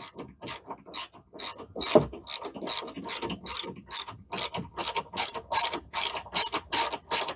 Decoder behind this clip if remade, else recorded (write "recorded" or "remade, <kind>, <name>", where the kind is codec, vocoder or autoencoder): recorded